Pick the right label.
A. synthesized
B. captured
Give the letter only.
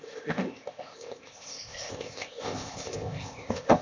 A